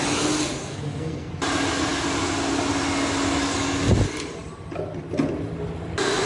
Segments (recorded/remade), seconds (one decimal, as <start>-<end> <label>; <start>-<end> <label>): 0.0-0.6 recorded; 0.6-1.3 remade; 1.3-6.3 recorded